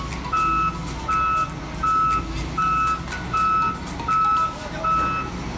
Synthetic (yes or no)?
no